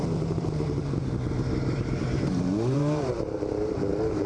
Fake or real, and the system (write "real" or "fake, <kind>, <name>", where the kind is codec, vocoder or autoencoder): fake, vocoder, BigVGAN v2